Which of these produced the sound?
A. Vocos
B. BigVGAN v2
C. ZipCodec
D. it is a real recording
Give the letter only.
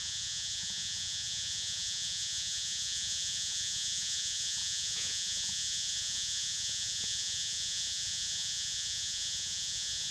A